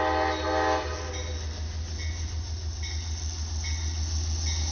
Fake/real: real